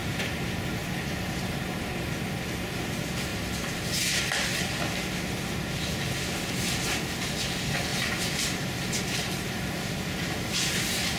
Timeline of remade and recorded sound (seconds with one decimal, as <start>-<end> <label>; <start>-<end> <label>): 0.0-0.6 remade; 0.6-3.3 recorded; 3.3-4.2 remade; 4.2-7.9 recorded; 7.9-10.5 remade; 10.5-11.2 recorded